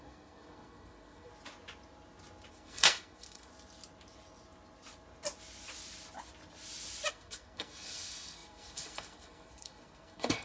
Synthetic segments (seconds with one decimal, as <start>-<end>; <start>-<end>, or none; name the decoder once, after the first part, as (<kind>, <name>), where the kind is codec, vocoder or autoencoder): 0.0-1.3 (codec, SNAC); 2.5-3.5; 7.1-10.4